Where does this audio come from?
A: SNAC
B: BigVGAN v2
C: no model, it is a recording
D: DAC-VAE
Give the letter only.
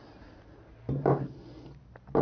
C